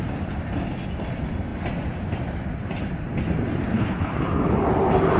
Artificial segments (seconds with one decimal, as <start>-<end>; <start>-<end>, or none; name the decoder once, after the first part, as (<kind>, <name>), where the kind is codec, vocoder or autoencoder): 3.7-4.2 (codec, HILCodec)